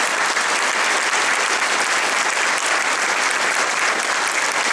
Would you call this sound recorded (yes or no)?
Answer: no